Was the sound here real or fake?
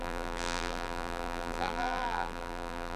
fake